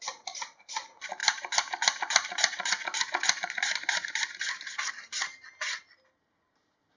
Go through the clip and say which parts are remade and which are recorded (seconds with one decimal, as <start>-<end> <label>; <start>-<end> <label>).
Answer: 0.0-7.0 recorded